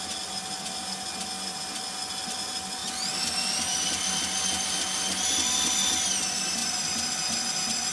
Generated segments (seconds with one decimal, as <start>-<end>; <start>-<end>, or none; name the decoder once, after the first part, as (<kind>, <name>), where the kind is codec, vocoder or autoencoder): none